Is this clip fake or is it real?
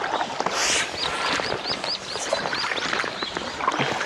real